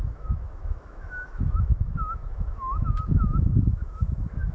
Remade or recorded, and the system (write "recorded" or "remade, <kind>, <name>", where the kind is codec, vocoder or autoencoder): remade, autoencoder, DAC-VAE